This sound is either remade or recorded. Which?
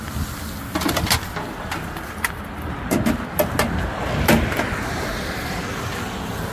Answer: recorded